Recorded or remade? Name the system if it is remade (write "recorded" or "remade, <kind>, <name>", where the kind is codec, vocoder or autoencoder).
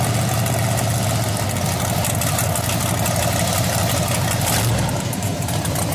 recorded